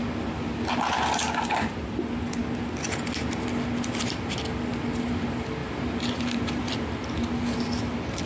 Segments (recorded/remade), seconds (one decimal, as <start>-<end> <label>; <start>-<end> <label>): 0.0-5.6 recorded; 5.6-7.1 remade; 7.1-8.3 recorded